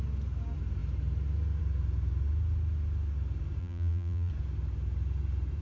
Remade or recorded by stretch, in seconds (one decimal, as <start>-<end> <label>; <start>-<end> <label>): 0.0-3.6 recorded; 3.6-4.3 remade; 4.3-5.6 recorded